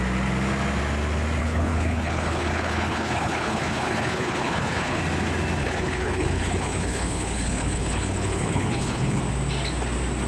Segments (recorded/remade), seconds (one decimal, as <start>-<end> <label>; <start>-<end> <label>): 0.0-1.4 recorded; 1.4-5.0 remade; 5.0-5.6 recorded; 5.6-9.2 remade; 9.2-10.3 recorded